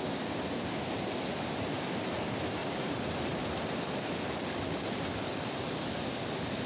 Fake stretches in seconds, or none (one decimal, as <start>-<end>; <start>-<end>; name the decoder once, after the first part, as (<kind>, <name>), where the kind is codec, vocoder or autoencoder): 2.6-3.2 (vocoder, BigVGAN v2)